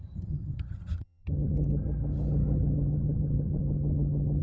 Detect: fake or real fake